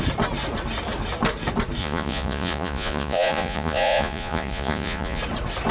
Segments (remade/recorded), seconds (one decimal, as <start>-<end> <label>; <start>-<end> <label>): 0.0-1.8 recorded; 1.8-5.2 remade; 5.2-5.7 recorded